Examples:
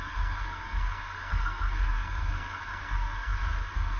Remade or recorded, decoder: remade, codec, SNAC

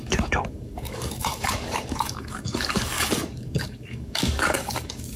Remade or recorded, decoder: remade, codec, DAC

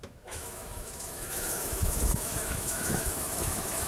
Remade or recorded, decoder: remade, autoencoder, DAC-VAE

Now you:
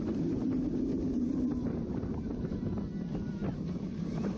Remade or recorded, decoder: recorded